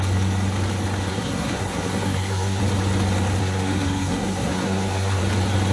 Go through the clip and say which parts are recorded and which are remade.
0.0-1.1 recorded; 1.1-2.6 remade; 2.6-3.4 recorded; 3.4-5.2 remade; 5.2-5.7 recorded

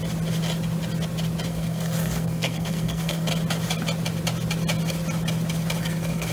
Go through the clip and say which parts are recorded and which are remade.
0.0-1.5 recorded; 1.5-3.3 remade; 3.3-5.8 recorded; 5.8-6.3 remade

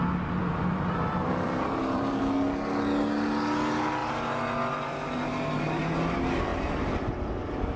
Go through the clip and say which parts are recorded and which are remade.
0.0-0.4 recorded; 0.4-2.2 remade; 2.2-7.8 recorded

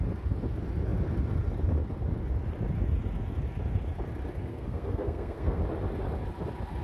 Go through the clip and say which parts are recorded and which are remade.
0.0-4.5 recorded; 4.5-5.6 remade; 5.6-6.8 recorded

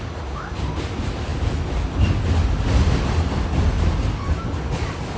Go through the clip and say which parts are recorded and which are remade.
0.0-5.2 recorded

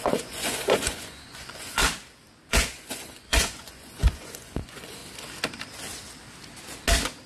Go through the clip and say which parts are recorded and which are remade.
0.0-1.8 remade; 1.8-2.5 recorded; 2.5-5.0 remade; 5.0-7.3 recorded

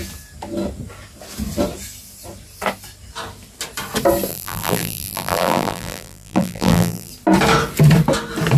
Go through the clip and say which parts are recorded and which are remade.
0.0-4.3 recorded; 4.3-7.1 remade; 7.1-8.6 recorded